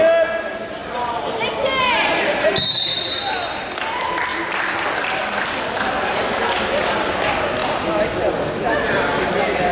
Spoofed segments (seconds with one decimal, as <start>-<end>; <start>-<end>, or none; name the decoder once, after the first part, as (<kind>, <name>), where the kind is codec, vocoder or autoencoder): 4.3-6.2 (vocoder, BigVGAN v2)